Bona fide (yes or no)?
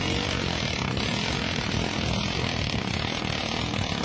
yes